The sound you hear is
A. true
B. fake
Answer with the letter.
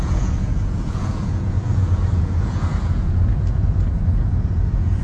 B